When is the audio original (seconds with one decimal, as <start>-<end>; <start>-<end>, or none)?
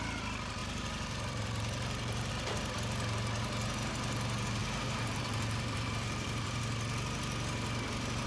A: 0.0-0.6; 2.3-4.6; 6.6-8.3